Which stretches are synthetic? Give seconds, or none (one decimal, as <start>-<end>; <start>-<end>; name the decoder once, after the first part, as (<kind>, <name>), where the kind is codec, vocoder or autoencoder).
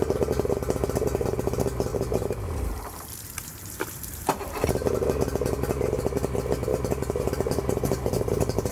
1.9-4.9 (vocoder, BigVGAN v2); 6.7-8.7